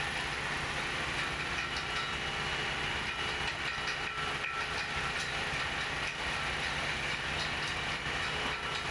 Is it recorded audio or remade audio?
recorded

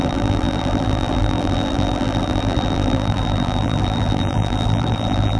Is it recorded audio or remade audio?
remade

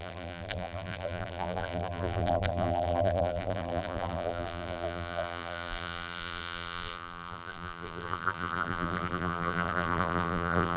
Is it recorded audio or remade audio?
remade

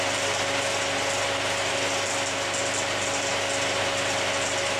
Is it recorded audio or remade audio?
recorded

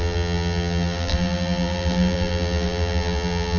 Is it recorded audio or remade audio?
remade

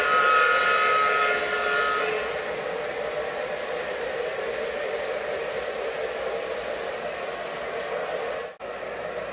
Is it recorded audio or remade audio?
recorded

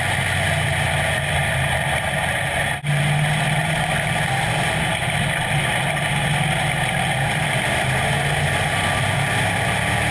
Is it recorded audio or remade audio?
recorded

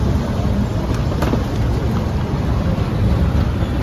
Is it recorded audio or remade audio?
remade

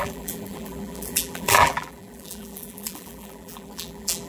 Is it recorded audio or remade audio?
remade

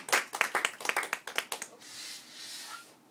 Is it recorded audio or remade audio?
recorded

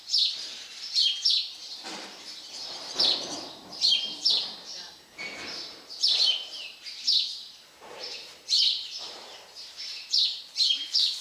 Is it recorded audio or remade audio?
remade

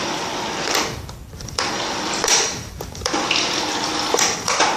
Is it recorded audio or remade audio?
remade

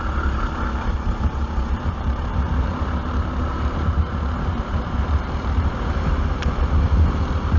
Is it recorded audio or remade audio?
remade